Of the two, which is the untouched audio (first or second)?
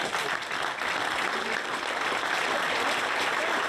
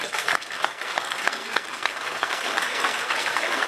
first